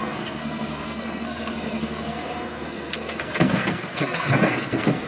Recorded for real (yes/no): no